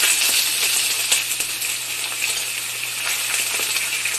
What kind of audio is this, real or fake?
real